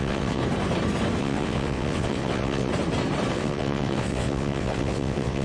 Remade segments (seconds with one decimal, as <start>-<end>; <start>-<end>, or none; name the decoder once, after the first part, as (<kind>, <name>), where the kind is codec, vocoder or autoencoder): 0.0-0.4 (vocoder, WaveNeXt); 1.2-2.7; 3.3-5.4